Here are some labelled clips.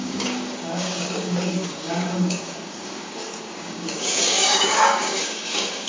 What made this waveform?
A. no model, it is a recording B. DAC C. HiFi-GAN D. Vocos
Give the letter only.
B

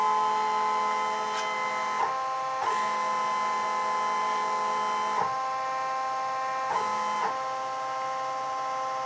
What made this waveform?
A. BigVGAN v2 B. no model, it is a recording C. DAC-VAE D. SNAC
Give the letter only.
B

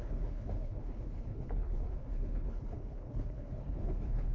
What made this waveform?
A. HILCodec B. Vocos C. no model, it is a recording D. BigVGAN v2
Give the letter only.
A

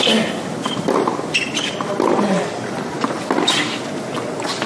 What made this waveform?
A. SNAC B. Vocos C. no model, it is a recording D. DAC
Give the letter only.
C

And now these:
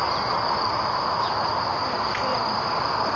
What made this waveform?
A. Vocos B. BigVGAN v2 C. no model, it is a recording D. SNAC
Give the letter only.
C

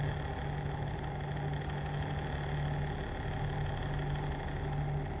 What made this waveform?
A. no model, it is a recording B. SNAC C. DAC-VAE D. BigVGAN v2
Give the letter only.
A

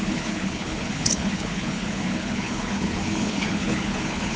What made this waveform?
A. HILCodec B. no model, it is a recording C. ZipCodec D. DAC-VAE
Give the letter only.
A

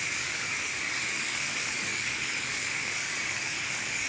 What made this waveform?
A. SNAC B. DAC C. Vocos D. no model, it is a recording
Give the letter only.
B